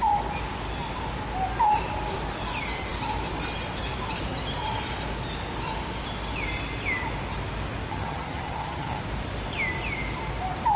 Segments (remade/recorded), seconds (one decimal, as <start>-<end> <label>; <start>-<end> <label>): 0.0-7.9 recorded; 7.9-9.0 remade; 9.0-10.8 recorded